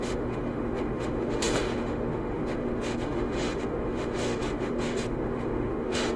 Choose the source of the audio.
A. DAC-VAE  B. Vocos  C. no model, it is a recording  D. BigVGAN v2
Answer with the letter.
A